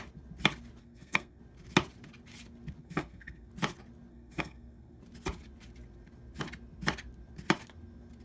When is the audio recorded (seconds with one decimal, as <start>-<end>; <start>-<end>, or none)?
0.0-0.8; 1.4-2.8; 3.5-4.1; 5.0-8.2

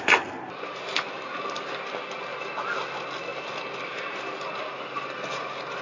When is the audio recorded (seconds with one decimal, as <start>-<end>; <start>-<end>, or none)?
0.0-2.3; 2.8-3.3; 4.7-5.8

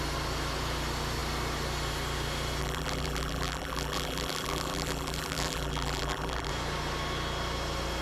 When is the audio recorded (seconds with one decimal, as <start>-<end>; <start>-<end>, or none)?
0.0-2.6; 6.5-8.0

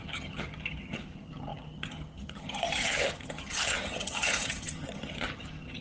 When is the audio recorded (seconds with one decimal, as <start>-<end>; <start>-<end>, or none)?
none

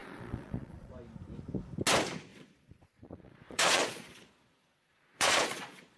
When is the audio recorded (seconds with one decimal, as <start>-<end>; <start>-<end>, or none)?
0.9-2.3